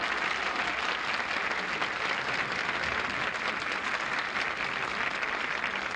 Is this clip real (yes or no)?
yes